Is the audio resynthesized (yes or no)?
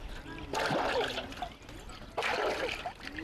no